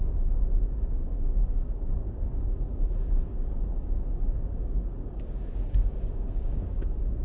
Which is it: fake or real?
fake